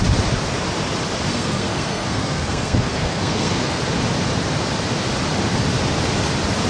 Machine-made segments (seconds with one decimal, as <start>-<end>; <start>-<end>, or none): 1.3-3.8